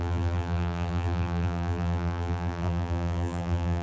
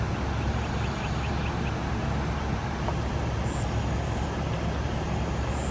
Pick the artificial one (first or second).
first